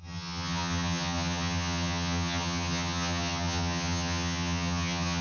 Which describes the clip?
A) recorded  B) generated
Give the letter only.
B